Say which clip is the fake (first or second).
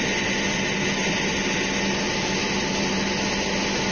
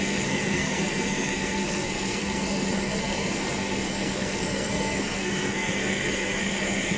second